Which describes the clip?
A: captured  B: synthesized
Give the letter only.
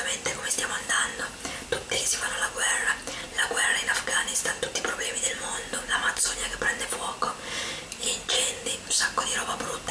A